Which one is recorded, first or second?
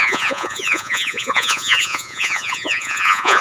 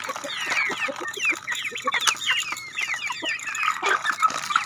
second